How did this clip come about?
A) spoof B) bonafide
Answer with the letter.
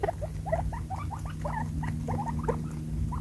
B